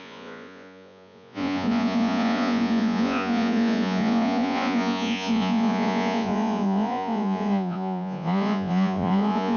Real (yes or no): no